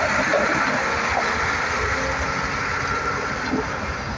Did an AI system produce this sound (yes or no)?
no